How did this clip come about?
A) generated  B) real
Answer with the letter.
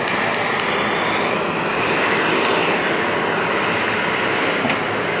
B